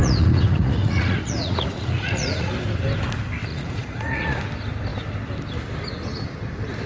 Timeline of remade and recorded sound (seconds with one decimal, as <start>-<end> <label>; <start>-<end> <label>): 0.0-2.5 remade; 2.5-3.5 recorded; 3.5-4.4 remade; 4.4-6.9 recorded